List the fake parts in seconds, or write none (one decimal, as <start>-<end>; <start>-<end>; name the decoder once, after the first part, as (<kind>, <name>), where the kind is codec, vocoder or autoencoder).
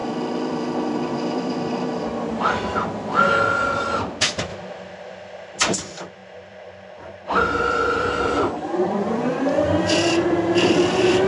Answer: 0.0-11.3 (vocoder, BigVGAN v2)